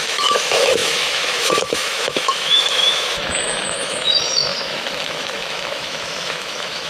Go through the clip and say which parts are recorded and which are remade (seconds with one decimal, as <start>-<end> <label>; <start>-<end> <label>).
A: 0.0-6.9 remade